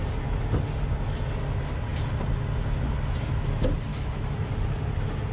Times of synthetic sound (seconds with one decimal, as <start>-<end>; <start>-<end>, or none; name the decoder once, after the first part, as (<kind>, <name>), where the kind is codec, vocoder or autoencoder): 3.9-4.5 (autoencoder, DAC-VAE)